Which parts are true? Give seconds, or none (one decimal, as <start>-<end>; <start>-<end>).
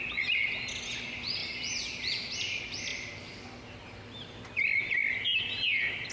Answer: 0.0-6.1